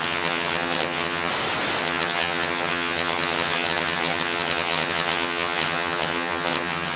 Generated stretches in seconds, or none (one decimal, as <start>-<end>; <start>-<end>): 0.0-1.3; 1.8-7.0